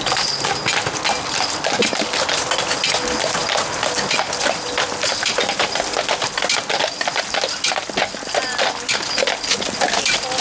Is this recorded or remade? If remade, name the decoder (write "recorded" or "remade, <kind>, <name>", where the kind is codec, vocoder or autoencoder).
recorded